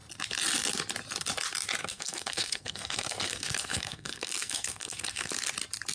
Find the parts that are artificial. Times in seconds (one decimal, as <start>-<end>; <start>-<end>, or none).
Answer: 1.8-5.3